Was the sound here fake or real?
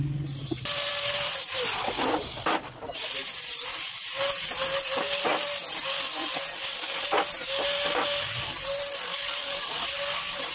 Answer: real